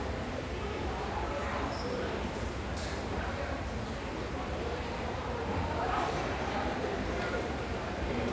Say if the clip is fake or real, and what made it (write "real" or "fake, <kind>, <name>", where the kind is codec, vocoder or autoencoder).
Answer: fake, vocoder, BigVGAN v2